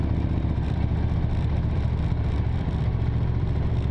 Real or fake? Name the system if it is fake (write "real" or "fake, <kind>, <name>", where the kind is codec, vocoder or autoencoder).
fake, vocoder, BigVGAN v2